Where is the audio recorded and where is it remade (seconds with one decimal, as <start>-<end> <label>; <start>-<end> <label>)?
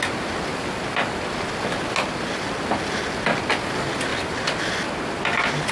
0.0-5.7 recorded